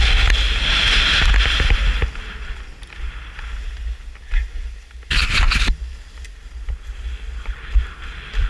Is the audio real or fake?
real